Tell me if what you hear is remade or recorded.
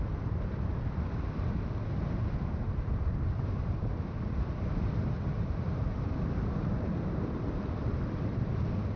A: remade